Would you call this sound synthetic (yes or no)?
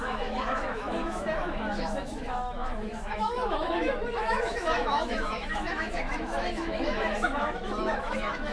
yes